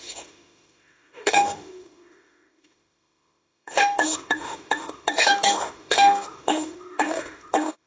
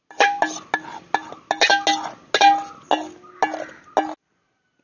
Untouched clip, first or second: second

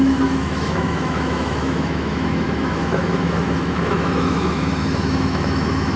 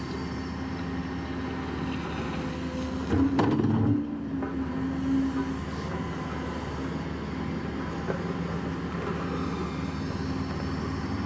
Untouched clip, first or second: second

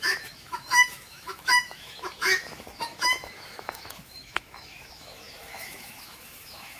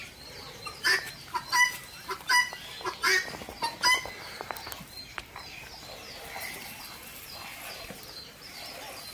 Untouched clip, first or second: second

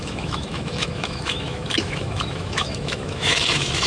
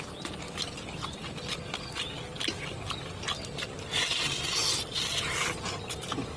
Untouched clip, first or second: second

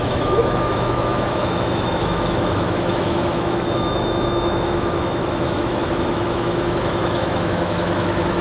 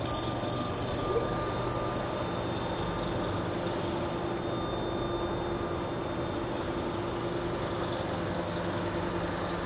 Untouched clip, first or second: second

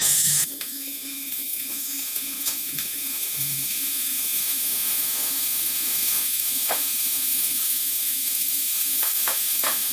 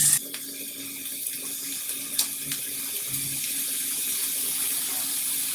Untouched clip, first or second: second